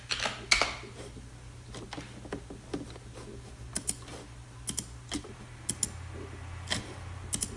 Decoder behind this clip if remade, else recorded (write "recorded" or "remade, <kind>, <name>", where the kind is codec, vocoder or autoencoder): recorded